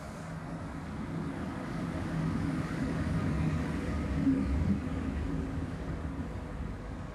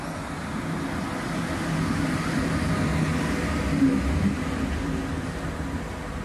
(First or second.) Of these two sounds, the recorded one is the second